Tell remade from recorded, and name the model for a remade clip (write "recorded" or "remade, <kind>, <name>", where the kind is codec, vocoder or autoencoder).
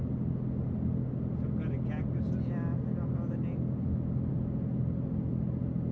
recorded